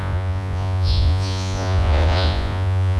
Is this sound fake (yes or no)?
yes